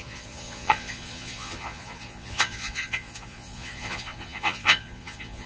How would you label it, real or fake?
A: fake